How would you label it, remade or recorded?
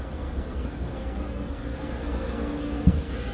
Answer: remade